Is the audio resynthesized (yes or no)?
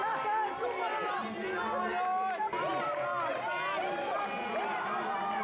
no